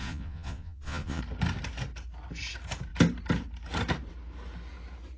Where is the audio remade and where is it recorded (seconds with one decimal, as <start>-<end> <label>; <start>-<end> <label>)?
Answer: 0.0-1.2 remade; 1.2-5.2 recorded

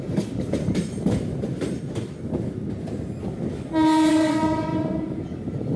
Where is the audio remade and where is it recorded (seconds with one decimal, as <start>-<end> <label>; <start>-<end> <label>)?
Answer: 0.0-0.6 remade; 0.6-4.1 recorded; 4.1-4.7 remade; 4.7-5.2 recorded; 5.2-5.8 remade

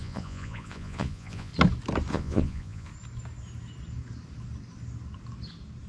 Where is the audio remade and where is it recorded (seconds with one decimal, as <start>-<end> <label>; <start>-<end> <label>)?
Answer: 0.0-1.5 remade; 1.5-2.1 recorded; 2.1-2.9 remade; 2.9-5.9 recorded

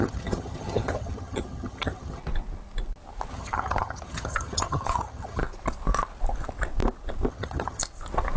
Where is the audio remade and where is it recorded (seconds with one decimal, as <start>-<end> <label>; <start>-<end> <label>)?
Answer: 0.0-2.2 remade; 2.2-3.3 recorded; 3.3-5.4 remade; 5.4-7.3 recorded; 7.3-7.8 remade; 7.8-8.4 recorded

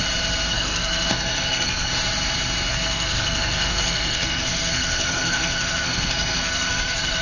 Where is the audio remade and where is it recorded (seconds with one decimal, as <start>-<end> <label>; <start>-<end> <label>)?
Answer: 0.0-0.5 recorded; 0.5-1.9 remade; 1.9-2.7 recorded; 2.7-7.2 remade

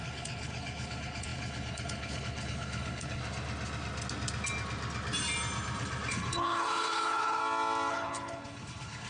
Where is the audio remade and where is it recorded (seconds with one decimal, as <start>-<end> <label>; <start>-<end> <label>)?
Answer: 0.0-3.2 remade; 3.2-6.1 recorded; 6.1-7.4 remade; 7.4-7.9 recorded; 7.9-9.1 remade

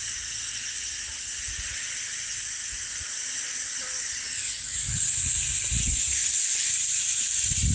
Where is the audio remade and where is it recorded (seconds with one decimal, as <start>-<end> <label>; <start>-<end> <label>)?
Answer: 0.0-5.8 recorded; 5.8-6.7 remade; 6.7-7.7 recorded

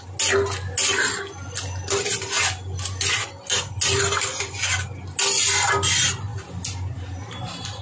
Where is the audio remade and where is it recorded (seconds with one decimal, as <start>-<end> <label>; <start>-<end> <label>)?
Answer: 0.0-7.8 recorded